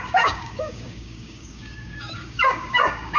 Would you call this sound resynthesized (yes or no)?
yes